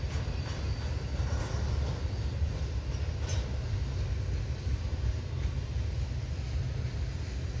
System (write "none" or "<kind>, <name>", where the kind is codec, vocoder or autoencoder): none